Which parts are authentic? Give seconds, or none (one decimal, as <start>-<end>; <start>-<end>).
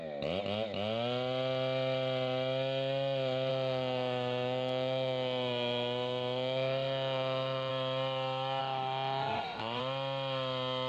0.0-3.5; 7.7-8.6; 9.8-10.9